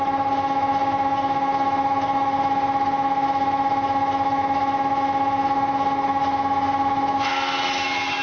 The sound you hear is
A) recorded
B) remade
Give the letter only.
B